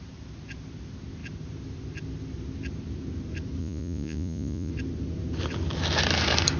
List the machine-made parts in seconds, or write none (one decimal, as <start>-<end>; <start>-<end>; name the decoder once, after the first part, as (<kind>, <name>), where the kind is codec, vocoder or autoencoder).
3.6-4.7 (vocoder, Vocos)